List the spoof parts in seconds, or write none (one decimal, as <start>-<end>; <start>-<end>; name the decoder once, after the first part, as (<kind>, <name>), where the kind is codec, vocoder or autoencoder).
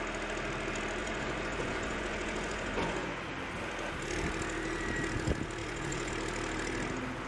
1.0-3.2 (vocoder, Vocos); 5.6-6.1